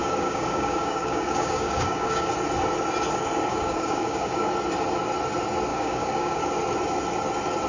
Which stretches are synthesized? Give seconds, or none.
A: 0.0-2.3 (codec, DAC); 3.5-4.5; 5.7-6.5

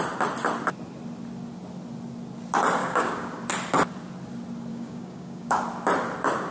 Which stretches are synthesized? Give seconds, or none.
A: 2.8-3.3 (codec, DAC); 4.7-5.6